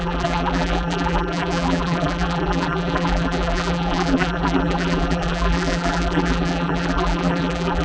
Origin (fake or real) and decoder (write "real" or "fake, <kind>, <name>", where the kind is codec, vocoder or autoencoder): fake, vocoder, BigVGAN v2